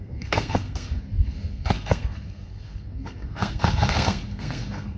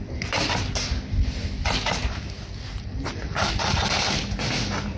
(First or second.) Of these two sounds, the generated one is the first